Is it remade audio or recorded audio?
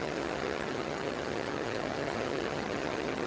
remade